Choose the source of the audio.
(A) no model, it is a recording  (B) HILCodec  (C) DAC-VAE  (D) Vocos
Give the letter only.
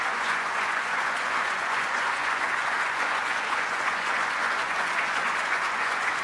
D